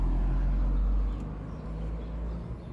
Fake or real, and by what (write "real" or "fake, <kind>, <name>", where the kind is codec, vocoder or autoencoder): real